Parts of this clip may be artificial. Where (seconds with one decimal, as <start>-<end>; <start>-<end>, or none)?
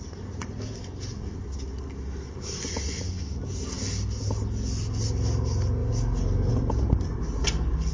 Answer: none